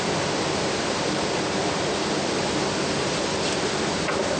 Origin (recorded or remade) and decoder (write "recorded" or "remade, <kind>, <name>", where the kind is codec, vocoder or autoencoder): recorded